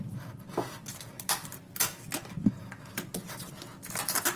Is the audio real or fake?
real